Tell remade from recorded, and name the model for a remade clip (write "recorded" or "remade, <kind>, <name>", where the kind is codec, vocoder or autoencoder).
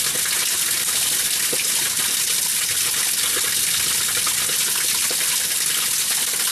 recorded